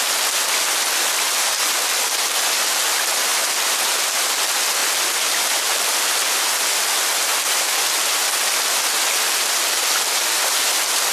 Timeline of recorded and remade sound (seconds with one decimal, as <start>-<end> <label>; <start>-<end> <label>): 0.0-11.1 recorded